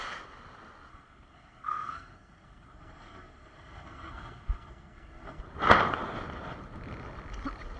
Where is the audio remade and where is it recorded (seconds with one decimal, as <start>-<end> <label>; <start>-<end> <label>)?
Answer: 0.0-0.9 recorded; 0.9-5.4 remade; 5.4-7.8 recorded